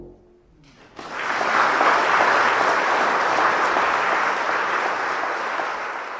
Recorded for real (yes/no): yes